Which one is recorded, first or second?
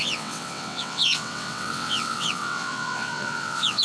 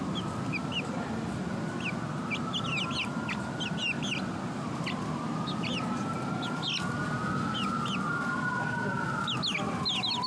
second